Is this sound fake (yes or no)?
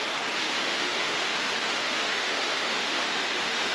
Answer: yes